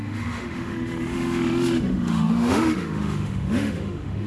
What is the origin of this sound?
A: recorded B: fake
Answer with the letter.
B